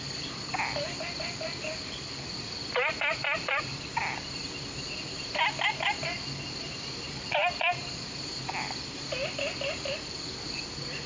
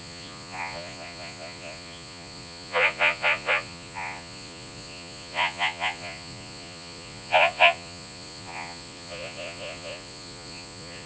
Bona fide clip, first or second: first